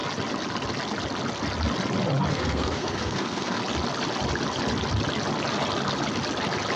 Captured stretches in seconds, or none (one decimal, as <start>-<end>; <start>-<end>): 0.0-2.3; 3.6-6.8

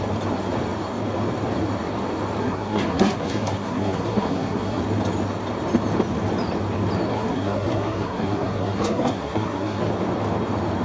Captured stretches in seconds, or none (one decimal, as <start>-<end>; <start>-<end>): 0.0-2.4; 4.8-7.1; 9.8-10.8